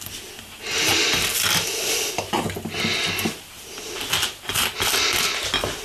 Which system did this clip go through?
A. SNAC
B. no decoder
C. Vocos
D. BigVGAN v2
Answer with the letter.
B